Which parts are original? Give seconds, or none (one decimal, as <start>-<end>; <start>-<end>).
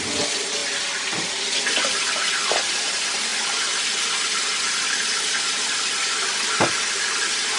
0.0-7.6